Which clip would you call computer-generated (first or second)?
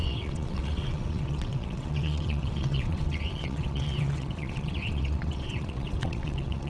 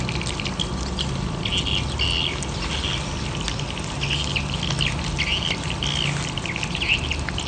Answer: first